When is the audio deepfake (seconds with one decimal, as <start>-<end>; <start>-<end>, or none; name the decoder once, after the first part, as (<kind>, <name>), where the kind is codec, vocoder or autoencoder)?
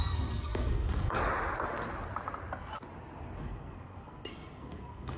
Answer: 0.0-1.2 (codec, SNAC); 3.4-5.2